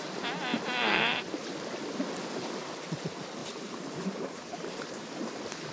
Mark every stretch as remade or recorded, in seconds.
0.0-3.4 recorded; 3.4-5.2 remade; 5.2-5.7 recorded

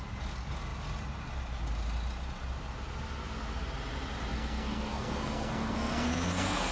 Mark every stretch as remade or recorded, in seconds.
0.0-4.3 recorded; 4.3-6.7 remade

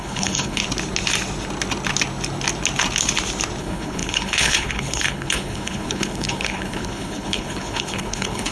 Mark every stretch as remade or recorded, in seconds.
0.0-0.6 remade; 0.6-3.6 recorded; 3.6-8.5 remade

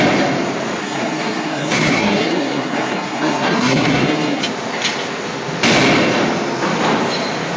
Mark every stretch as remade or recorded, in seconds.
0.0-0.8 recorded; 0.8-4.4 remade; 4.4-7.6 recorded

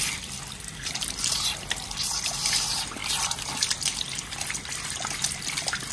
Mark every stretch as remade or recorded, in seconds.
0.0-5.9 recorded

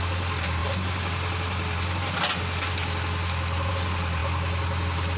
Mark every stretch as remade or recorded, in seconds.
0.0-5.2 recorded